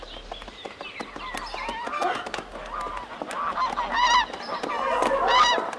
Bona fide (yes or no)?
yes